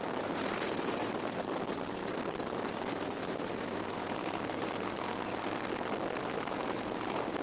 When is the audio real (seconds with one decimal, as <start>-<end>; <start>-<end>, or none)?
5.3-6.2